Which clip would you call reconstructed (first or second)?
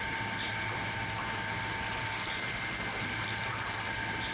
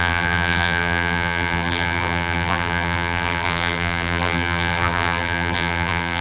second